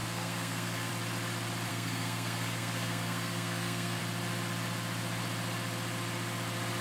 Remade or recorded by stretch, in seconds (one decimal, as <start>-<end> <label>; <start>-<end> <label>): 0.0-0.9 remade; 0.9-1.7 recorded; 1.7-4.0 remade; 4.0-6.8 recorded